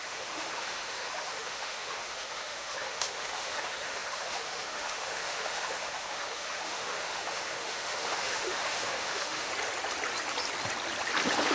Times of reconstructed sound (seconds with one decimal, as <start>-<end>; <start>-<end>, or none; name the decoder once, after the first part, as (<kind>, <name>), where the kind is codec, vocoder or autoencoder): 0.0-9.5 (autoencoder, DAC-VAE)